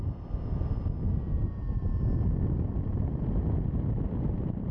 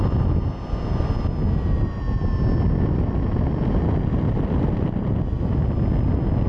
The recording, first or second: second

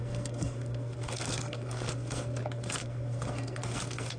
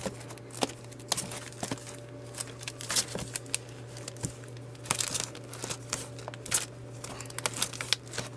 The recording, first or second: second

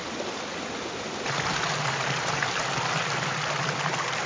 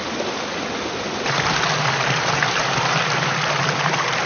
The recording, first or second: second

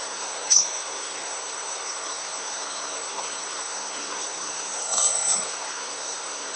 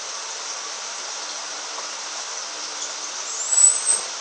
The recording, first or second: second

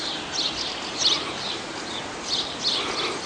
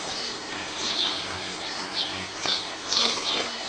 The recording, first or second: first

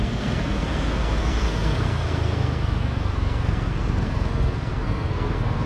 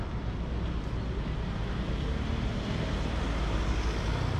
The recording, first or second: second